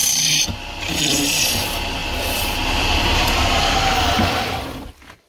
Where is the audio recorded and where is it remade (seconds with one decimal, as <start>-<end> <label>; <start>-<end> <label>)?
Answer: 0.0-5.3 remade